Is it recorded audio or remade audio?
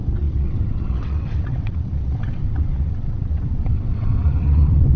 remade